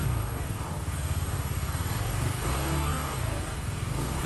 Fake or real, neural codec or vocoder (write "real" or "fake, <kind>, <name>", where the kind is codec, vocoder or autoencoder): fake, codec, DAC